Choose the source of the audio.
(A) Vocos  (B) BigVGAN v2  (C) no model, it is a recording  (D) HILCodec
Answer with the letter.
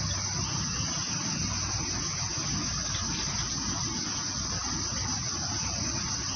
C